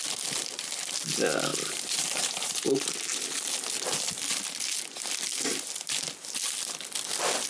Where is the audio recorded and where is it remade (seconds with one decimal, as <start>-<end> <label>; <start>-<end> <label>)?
0.0-1.5 recorded; 1.5-2.9 remade; 2.9-7.5 recorded